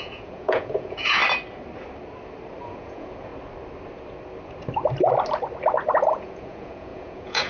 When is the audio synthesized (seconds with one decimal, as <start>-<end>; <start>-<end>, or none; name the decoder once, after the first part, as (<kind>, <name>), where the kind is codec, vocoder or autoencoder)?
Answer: 0.0-1.2 (vocoder, Vocos); 2.6-3.3; 6.1-7.5